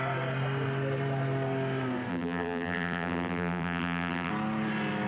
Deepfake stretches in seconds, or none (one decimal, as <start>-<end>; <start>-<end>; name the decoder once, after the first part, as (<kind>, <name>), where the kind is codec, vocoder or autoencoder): 2.1-4.3 (vocoder, BigVGAN v2)

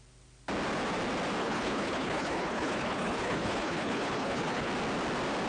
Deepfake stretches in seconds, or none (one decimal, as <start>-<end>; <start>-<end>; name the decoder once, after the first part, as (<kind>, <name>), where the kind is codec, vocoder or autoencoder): 1.4-4.7 (codec, HILCodec)